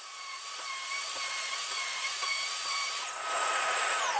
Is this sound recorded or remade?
remade